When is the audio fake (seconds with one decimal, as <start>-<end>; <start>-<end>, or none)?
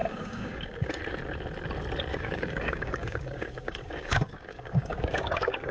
0.0-1.0; 2.1-5.7